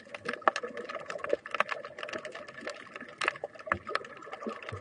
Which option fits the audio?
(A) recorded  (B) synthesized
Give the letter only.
A